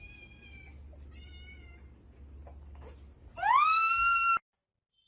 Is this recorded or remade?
recorded